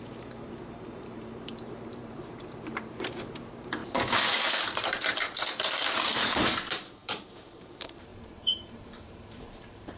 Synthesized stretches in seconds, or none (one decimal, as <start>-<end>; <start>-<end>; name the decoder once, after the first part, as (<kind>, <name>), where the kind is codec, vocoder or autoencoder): 0.0-3.8 (vocoder, BigVGAN v2); 4.3-10.0